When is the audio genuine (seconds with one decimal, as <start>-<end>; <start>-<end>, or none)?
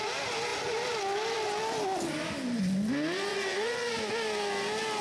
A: 0.0-3.3; 3.9-5.0